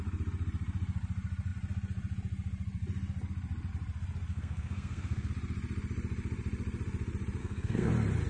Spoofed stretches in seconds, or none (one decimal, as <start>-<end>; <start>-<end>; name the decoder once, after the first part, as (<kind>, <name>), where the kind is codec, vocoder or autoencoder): 4.3-5.3 (codec, SNAC); 7.4-7.9